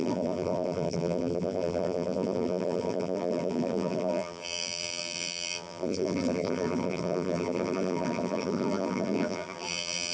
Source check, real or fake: fake